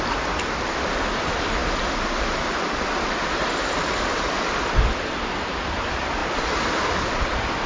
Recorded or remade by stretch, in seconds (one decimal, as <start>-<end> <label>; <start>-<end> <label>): 0.0-6.2 remade; 6.2-6.8 recorded; 6.8-7.7 remade